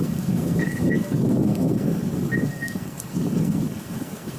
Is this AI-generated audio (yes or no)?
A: yes